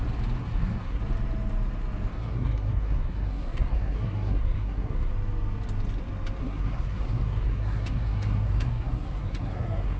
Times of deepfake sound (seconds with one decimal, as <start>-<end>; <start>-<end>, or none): 0.4-1.0; 2.1-5.1; 6.4-10.0

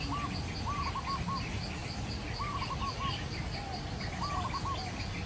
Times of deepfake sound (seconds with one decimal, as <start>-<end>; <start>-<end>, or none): 1.8-5.3